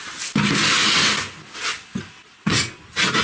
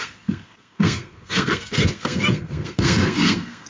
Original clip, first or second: first